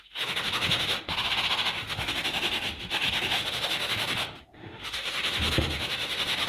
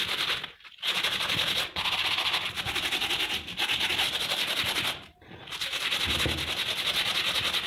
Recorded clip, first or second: second